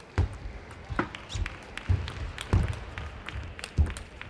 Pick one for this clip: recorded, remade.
recorded